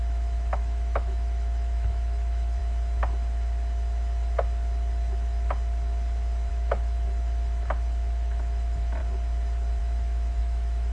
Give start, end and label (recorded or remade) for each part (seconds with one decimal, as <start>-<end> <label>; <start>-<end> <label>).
0.0-2.6 remade; 2.6-6.5 recorded; 6.5-9.0 remade; 9.0-9.8 recorded; 9.8-10.9 remade